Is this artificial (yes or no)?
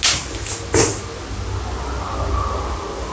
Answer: no